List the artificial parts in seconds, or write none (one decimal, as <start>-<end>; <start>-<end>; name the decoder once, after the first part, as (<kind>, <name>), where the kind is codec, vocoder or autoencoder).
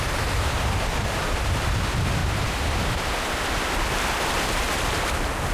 none